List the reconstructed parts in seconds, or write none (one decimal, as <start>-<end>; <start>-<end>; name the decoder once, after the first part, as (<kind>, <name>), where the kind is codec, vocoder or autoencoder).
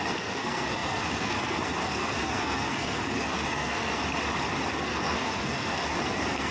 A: 0.0-4.0 (codec, SNAC); 4.7-6.5